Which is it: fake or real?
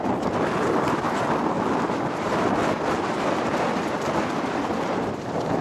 real